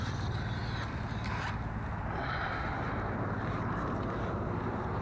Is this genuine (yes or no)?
yes